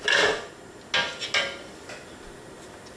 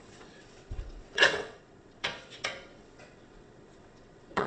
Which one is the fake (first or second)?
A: second